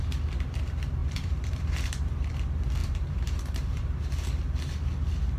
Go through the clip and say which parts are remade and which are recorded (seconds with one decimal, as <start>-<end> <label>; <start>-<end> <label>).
0.0-1.0 recorded; 1.0-2.3 remade; 2.3-2.8 recorded; 2.8-4.1 remade; 4.1-5.4 recorded